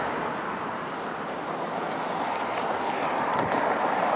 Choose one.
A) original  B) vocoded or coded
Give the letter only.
A